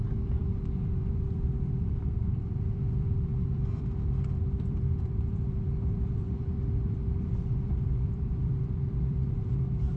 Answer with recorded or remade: remade